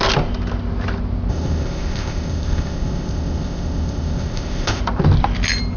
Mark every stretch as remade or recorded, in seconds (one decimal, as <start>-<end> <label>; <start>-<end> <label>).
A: 0.0-1.3 recorded; 1.3-4.8 remade; 4.8-5.8 recorded